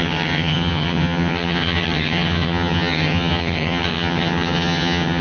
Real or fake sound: fake